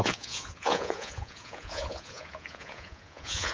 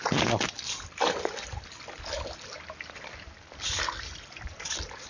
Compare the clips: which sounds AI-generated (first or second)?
first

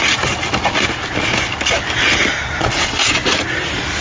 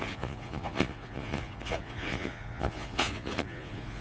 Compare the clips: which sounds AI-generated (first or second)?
second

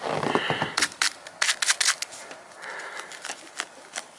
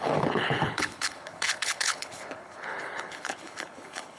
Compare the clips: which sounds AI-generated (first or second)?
second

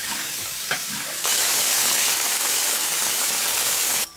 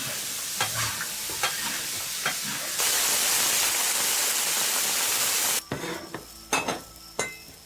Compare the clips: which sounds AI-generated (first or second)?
first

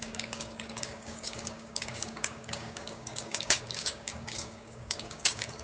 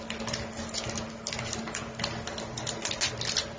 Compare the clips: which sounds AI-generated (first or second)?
first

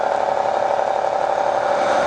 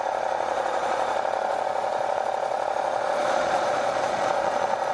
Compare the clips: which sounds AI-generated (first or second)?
second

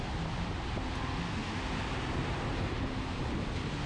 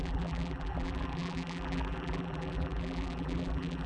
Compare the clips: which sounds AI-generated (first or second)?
second